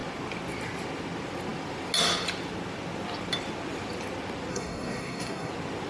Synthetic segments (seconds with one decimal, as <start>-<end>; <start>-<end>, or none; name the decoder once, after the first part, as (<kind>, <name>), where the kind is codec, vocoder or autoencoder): 4.5-5.5 (codec, SNAC)